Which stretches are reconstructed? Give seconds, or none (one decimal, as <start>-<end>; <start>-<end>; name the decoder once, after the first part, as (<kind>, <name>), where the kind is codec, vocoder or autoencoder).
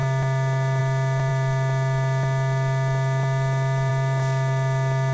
none